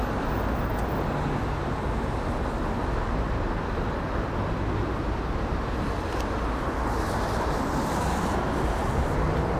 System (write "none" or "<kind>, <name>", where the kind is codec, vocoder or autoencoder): none